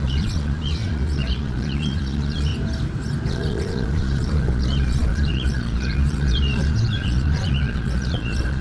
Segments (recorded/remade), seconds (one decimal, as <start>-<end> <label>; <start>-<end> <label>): 0.0-2.5 remade; 2.5-3.3 recorded; 3.3-8.6 remade